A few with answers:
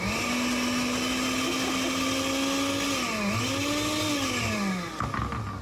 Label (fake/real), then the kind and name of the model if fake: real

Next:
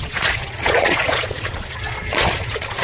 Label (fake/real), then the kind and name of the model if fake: fake, vocoder, Vocos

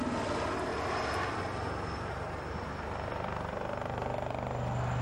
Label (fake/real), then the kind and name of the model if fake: real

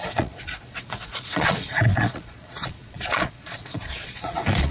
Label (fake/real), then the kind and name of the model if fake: fake, vocoder, Vocos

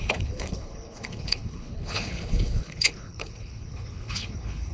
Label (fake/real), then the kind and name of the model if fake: fake, codec, HILCodec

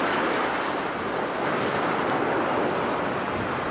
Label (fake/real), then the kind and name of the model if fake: real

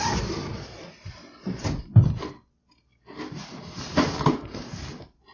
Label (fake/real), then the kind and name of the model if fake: real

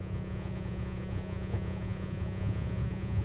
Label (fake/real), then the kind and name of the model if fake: fake, vocoder, Vocos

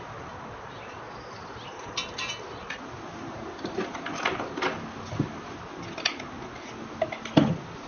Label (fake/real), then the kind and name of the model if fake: real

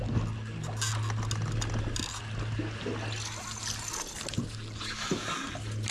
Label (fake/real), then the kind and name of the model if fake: real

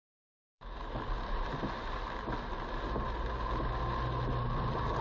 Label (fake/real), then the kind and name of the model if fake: real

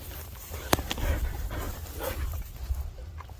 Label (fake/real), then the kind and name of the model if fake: real